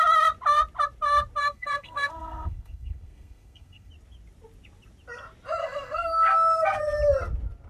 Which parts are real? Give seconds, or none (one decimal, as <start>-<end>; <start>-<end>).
0.0-1.4; 3.9-5.6; 6.8-7.7